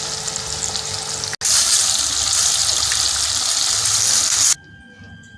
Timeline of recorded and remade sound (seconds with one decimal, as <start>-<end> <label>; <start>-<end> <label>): 0.0-5.4 recorded